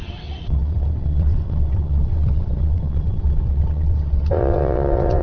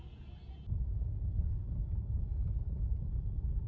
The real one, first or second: second